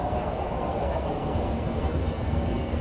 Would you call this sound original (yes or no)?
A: no